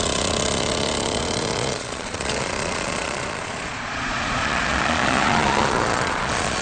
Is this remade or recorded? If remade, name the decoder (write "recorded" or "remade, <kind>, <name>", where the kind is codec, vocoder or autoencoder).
remade, vocoder, Vocos